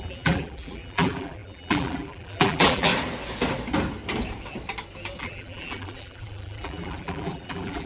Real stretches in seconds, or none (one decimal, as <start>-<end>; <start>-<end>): 2.9-5.2